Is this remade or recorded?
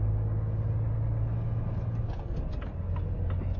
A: recorded